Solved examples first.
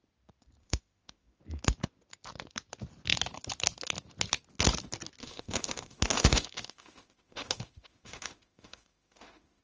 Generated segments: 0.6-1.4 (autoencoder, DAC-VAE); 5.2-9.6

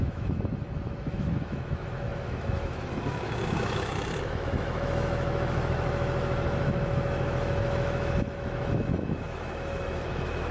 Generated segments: 0.0-10.5 (autoencoder, DAC-VAE)

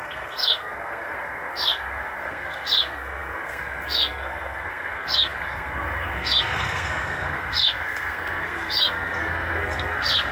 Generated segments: 0.0-10.3 (codec, SNAC)

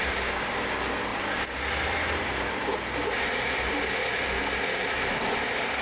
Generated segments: 1.1-3.7 (vocoder, BigVGAN v2)

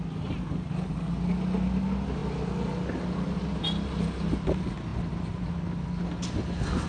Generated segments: none

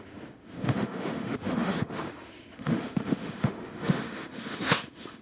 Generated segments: 0.0-5.2 (autoencoder, DAC-VAE)

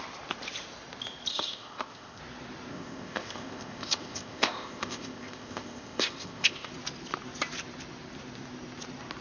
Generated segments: 1.3-2.2 (codec, ZipCodec); 2.7-6.7

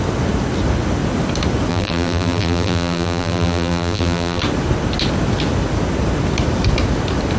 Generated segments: 1.7-4.4 (vocoder, BigVGAN v2)